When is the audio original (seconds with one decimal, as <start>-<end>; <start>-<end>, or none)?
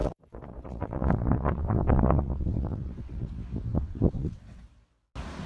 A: 3.3-3.7; 4.6-5.5